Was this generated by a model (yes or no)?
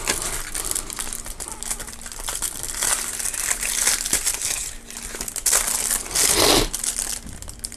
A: no